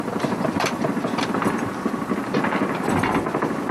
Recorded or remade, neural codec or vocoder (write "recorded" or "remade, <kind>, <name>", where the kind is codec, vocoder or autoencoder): recorded